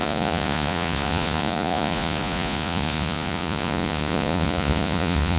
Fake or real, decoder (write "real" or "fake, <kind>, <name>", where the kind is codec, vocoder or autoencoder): fake, vocoder, Vocos